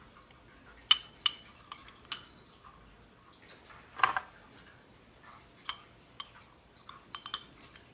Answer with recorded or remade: recorded